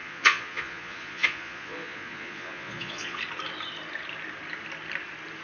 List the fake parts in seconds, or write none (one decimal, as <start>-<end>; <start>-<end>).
0.0-3.2